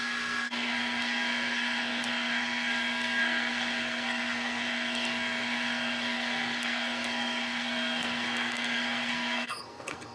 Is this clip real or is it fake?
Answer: fake